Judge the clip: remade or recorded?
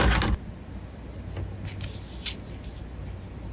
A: recorded